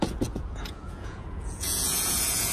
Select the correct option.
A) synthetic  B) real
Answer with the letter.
A